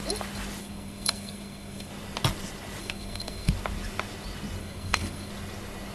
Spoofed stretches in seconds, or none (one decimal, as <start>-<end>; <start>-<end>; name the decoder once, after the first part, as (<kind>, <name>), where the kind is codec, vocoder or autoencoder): 0.6-1.9 (codec, SNAC); 2.8-3.5; 4.6-5.3